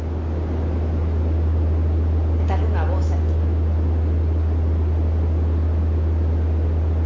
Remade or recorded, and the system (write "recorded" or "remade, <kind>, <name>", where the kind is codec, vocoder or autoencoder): recorded